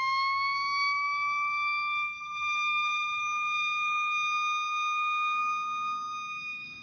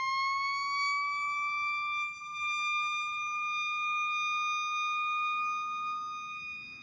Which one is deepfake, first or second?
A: first